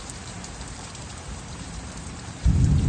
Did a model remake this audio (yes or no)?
yes